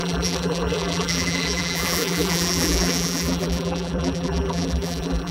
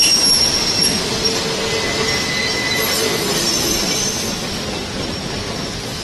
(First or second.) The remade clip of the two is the first